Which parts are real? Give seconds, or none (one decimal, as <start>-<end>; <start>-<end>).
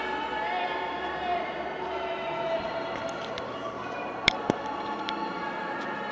0.0-1.3; 5.0-6.1